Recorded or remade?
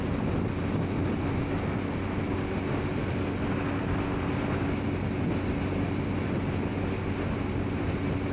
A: recorded